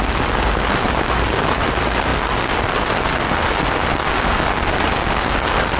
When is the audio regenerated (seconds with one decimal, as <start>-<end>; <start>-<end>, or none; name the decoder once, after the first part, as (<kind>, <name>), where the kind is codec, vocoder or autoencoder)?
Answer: none